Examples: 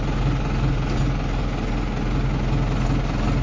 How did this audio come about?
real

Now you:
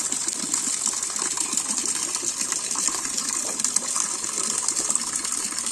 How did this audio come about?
real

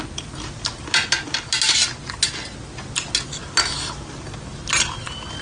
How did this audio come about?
real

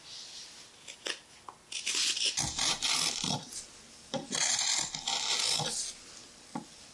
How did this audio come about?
real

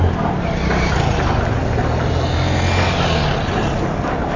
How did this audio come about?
real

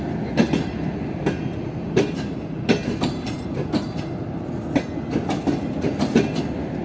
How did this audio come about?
real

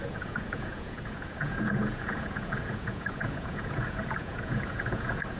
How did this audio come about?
fake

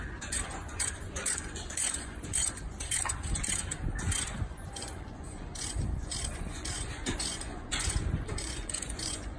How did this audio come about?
fake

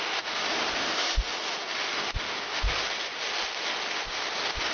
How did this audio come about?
real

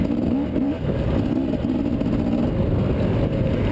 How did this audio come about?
real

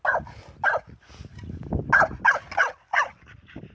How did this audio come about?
real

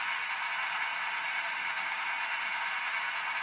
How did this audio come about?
real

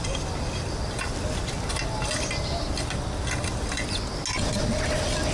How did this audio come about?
real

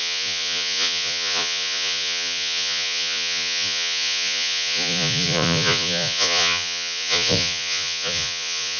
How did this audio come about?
fake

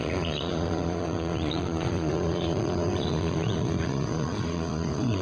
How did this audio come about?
fake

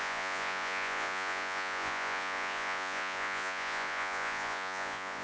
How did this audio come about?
fake